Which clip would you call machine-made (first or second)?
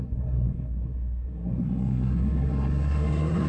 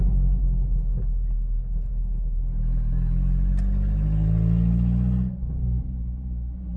first